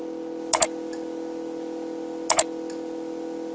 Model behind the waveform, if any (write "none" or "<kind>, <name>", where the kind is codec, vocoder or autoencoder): none